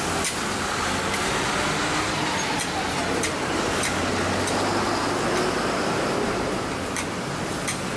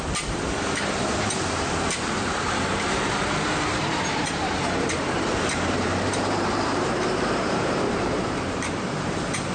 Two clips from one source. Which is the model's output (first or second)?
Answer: second